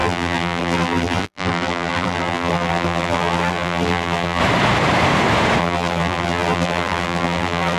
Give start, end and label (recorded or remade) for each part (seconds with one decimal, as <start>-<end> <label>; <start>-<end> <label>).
0.0-4.4 remade; 4.4-5.6 recorded; 5.6-7.8 remade